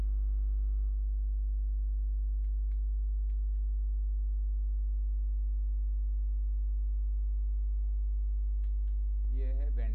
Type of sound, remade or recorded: recorded